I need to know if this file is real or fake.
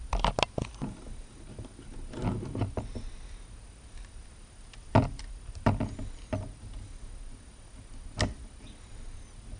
real